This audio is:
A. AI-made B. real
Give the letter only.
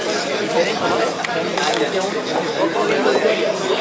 B